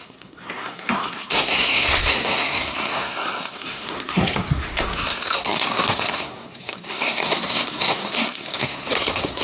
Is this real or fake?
fake